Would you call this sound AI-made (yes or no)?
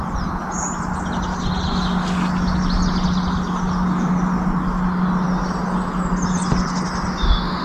no